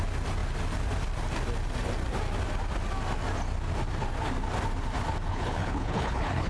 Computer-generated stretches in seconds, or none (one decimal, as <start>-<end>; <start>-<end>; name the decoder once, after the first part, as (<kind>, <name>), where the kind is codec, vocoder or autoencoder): 5.3-6.5 (codec, HILCodec)